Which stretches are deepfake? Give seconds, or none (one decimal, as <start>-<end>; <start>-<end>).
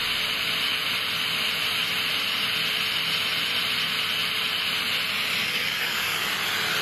5.4-6.3